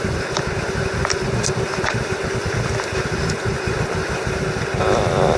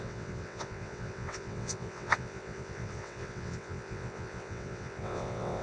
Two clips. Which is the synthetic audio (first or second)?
second